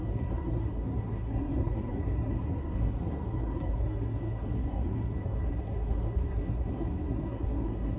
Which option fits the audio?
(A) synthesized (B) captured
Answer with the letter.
A